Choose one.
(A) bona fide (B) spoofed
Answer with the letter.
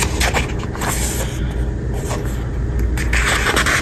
A